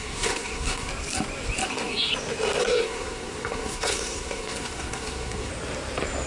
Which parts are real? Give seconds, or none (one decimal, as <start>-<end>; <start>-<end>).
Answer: 0.9-1.7; 2.1-2.6; 5.5-6.3